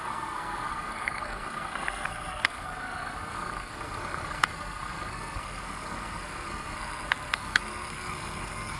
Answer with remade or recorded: remade